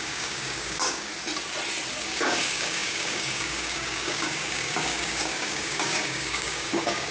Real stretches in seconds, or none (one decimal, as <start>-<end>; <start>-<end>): 1.1-2.0